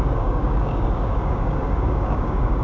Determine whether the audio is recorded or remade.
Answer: remade